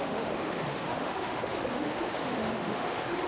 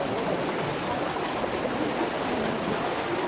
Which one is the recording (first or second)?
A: second